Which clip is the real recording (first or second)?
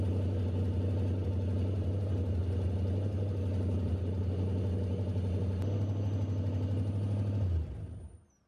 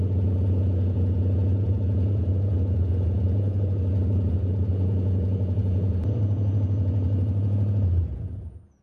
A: first